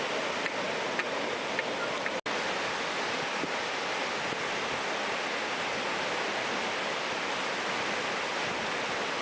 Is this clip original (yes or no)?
yes